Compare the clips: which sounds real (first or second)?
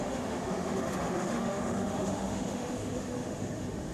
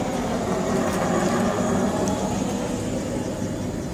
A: second